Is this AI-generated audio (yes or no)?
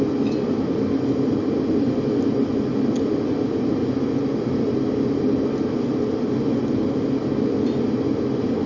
no